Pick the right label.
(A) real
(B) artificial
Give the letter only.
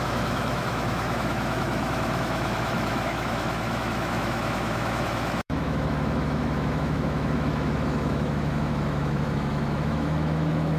B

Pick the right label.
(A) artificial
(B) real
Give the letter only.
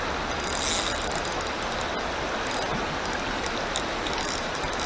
B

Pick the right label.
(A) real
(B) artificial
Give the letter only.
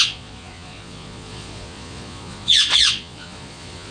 B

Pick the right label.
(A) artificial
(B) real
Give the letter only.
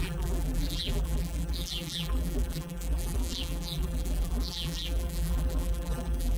A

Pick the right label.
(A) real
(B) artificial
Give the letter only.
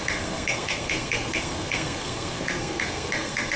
B